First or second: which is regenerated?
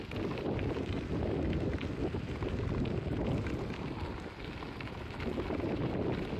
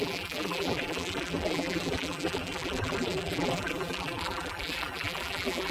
second